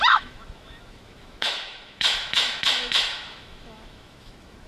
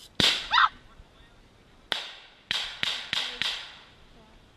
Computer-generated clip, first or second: first